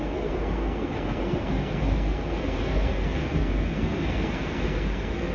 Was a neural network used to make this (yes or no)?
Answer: yes